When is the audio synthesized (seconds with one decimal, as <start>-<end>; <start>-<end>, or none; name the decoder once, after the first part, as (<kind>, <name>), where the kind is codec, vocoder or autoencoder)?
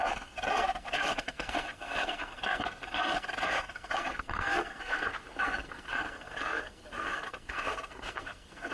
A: 0.0-8.7 (codec, SNAC)